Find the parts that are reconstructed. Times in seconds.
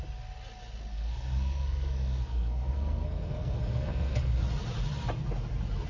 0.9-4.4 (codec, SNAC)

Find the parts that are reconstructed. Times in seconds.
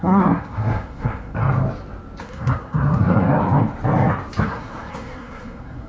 0.0-1.4 (codec, SNAC); 2.2-3.4; 4.4-5.9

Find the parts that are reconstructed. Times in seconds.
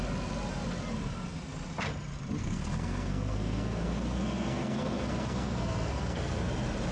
2.4-6.5 (codec, SNAC)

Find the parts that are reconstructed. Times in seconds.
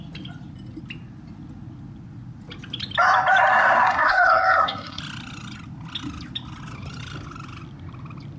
3.5-5.0 (codec, SNAC)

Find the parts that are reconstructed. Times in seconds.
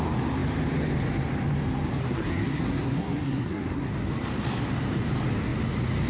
2.0-3.9 (codec, SNAC)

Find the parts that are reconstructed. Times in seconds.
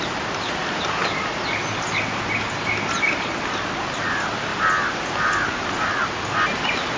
none